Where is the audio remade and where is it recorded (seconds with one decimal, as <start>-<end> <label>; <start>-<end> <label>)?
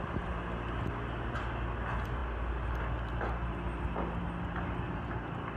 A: 0.0-5.6 recorded